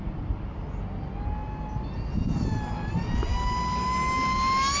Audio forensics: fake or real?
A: real